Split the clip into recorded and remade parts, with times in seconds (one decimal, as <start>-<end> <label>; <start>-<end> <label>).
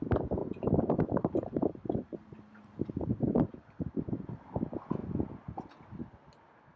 0.0-0.4 recorded; 0.4-4.5 remade; 4.5-6.8 recorded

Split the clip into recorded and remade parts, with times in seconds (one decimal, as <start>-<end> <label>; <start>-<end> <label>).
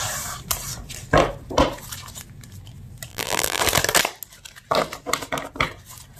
0.0-3.1 recorded; 3.1-3.6 remade; 3.6-6.2 recorded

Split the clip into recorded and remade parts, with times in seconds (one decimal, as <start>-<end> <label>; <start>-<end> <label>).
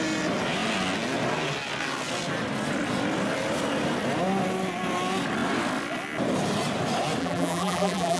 0.0-7.2 recorded; 7.2-8.2 remade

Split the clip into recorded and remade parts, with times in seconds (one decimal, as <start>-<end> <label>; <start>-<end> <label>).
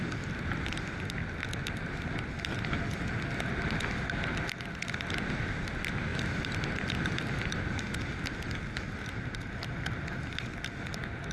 0.0-11.3 recorded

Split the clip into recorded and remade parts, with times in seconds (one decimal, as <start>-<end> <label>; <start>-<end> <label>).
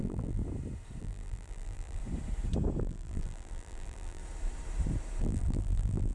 0.0-0.4 remade; 0.4-1.0 recorded; 1.0-2.0 remade; 2.0-2.8 recorded; 2.8-4.2 remade; 4.2-5.2 recorded; 5.2-6.1 remade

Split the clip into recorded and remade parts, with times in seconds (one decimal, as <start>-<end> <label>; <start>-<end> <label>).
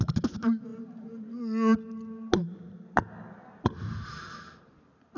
0.0-5.2 recorded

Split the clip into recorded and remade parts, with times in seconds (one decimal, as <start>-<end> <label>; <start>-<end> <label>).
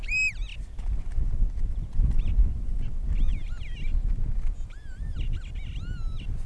0.0-3.3 recorded; 3.3-5.3 remade; 5.3-6.5 recorded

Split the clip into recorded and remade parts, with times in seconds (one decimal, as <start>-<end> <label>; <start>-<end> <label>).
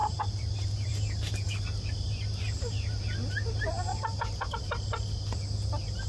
0.0-0.9 remade; 0.9-6.1 recorded